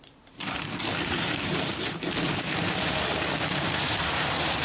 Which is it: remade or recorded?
remade